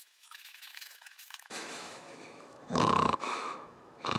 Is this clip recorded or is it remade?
remade